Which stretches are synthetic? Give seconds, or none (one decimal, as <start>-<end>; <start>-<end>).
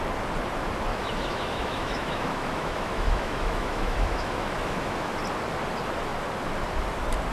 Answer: 0.9-5.1